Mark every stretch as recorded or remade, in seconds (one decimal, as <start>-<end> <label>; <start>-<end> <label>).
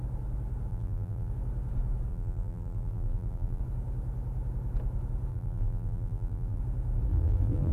0.0-0.7 recorded; 0.7-1.3 remade; 1.3-2.1 recorded; 2.1-3.6 remade; 3.6-5.3 recorded; 5.3-6.6 remade; 6.6-7.1 recorded; 7.1-7.7 remade